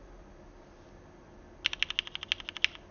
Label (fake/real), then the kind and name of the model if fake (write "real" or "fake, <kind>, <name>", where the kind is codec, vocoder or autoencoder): real